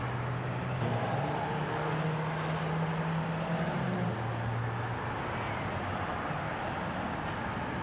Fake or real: real